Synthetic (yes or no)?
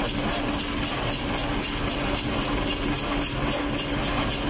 no